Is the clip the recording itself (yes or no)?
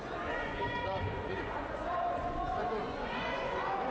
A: no